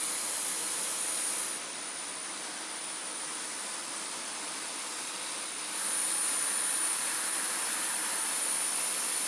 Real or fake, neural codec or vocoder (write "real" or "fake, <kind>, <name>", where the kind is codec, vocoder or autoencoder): real